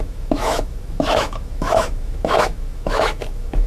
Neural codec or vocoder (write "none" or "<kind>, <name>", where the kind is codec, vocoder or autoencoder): autoencoder, DAC-VAE